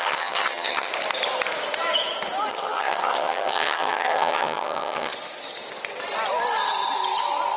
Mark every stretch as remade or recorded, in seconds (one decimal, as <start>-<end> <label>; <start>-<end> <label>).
0.0-0.9 remade; 0.9-2.5 recorded; 2.5-5.1 remade; 5.1-7.6 recorded